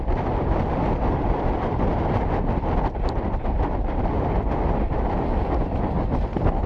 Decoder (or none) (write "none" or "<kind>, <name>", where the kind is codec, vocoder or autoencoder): none